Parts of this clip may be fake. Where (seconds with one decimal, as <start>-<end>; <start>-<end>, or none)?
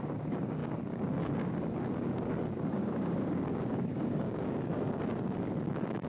0.0-6.1